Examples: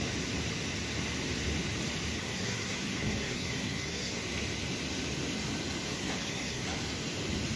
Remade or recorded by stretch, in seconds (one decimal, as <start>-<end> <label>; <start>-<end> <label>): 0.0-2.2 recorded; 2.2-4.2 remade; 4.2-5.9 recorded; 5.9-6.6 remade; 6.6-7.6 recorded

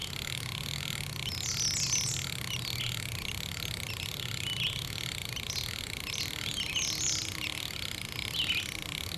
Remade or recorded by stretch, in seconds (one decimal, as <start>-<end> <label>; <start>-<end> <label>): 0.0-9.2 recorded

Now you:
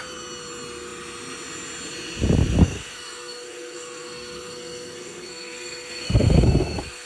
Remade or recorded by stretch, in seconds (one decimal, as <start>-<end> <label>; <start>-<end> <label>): 0.0-2.6 recorded; 2.6-7.1 remade